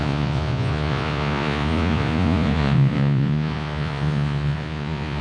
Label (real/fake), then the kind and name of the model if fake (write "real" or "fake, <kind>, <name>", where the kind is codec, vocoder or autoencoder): fake, vocoder, Vocos